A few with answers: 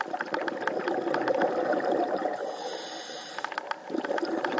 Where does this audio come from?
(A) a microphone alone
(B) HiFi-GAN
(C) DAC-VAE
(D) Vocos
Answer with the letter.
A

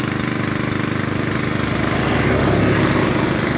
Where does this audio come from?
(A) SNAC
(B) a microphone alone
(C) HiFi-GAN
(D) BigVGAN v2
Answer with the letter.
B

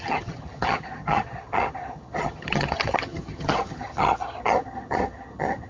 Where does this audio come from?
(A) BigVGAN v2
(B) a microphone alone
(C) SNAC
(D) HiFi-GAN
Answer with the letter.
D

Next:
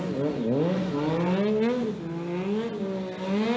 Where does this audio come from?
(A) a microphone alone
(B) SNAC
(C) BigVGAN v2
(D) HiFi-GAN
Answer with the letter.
A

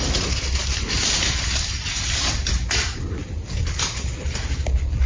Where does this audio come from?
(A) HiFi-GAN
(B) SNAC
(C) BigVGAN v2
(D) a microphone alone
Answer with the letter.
D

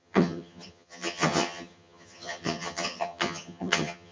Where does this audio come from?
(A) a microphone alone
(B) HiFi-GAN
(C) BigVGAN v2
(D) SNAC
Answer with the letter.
B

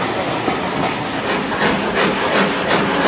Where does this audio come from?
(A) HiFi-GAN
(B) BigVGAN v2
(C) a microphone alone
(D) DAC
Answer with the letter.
C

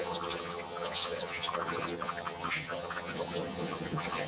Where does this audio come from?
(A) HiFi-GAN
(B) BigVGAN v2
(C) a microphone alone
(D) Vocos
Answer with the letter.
A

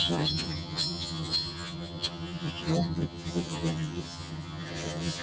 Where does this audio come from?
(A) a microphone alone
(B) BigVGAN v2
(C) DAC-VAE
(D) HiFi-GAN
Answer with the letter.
D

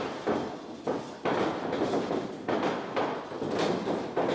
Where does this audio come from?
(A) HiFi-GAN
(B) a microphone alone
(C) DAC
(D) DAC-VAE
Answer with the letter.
B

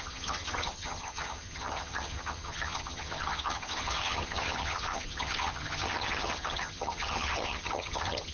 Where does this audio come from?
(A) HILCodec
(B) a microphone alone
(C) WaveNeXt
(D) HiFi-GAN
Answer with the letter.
D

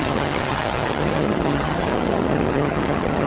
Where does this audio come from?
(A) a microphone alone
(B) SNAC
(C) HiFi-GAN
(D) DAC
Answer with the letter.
C